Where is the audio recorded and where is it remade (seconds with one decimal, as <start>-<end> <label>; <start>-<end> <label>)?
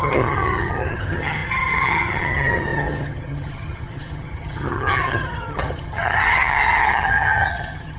0.0-8.0 remade